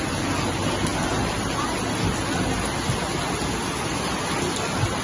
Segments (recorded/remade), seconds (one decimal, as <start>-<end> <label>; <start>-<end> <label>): 0.0-5.0 recorded